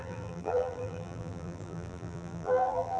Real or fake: fake